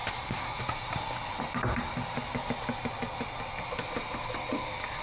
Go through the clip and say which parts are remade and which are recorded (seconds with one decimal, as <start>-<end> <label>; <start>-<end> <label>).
0.0-5.0 recorded

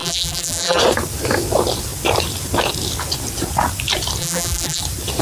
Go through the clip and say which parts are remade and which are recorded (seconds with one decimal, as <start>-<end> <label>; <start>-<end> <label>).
0.0-0.8 remade; 0.8-4.2 recorded; 4.2-4.8 remade; 4.8-5.2 recorded

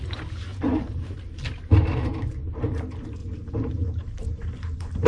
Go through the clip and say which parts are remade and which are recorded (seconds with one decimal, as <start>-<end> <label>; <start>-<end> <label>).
0.0-0.5 recorded; 0.5-1.2 remade; 1.2-3.2 recorded; 3.2-5.1 remade

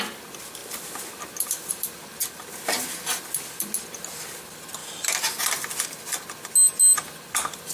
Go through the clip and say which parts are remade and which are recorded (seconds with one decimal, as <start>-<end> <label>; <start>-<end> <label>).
0.0-7.7 recorded

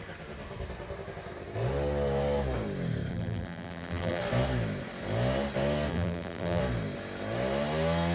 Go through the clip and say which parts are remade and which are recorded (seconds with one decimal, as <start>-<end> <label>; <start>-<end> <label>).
0.0-3.1 recorded; 3.1-4.2 remade; 4.2-5.9 recorded; 5.9-6.6 remade; 6.6-8.1 recorded

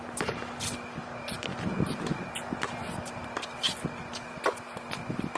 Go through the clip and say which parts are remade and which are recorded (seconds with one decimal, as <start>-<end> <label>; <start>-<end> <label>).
0.0-5.4 recorded

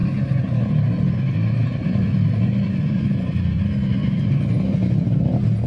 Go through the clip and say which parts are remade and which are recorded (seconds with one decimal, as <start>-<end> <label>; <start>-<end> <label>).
0.0-1.6 recorded; 1.6-3.6 remade; 3.6-5.7 recorded

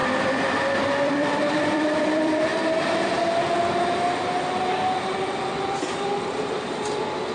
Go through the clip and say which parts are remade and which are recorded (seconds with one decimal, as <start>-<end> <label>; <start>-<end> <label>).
0.0-2.5 remade; 2.5-6.2 recorded; 6.2-7.3 remade